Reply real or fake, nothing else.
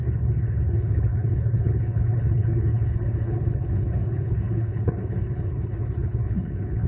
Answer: fake